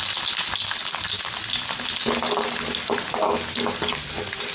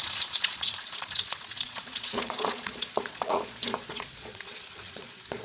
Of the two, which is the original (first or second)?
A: first